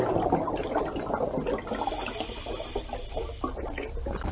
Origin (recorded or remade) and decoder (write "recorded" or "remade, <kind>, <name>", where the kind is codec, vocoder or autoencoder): recorded